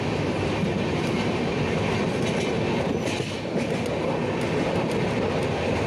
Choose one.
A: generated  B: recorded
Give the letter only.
B